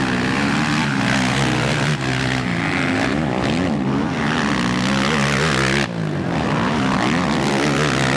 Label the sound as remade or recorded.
recorded